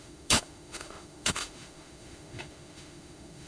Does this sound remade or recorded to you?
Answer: remade